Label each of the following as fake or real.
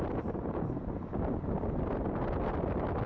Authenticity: real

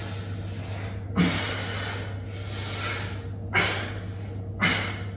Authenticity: real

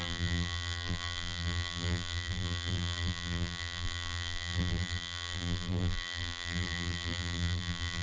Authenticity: fake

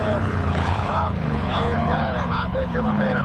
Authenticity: fake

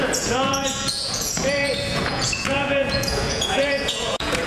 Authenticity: fake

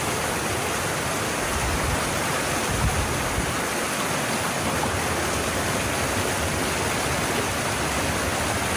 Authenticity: real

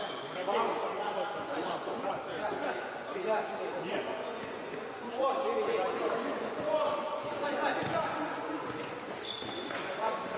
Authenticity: fake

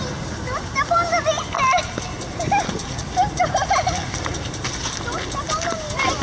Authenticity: real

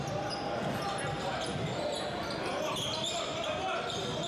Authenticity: real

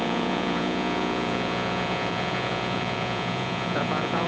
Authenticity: fake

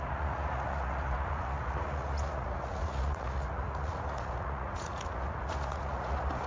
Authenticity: fake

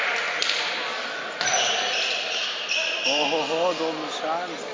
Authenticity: real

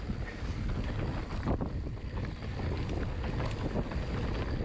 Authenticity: real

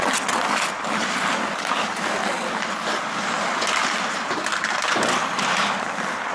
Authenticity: real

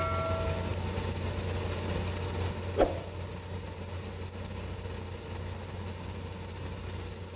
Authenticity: real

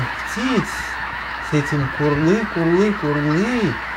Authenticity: fake